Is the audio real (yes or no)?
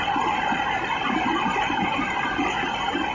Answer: yes